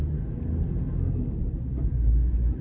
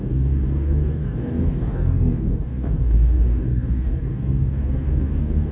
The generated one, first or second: second